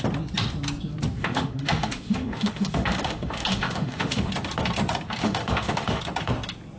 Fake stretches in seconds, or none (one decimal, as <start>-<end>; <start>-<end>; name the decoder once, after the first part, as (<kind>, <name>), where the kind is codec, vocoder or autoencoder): 1.2-4.3 (autoencoder, DAC-VAE); 5.2-6.0